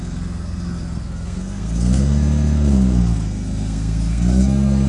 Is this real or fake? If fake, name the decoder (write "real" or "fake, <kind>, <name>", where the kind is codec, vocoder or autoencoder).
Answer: fake, codec, SNAC